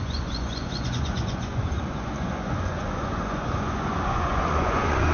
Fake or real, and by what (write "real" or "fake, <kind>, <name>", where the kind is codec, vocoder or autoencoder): fake, vocoder, Vocos